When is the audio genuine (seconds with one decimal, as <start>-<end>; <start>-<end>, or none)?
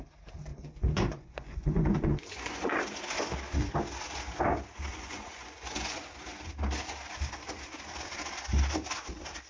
0.0-0.5; 2.8-4.9; 6.0-9.5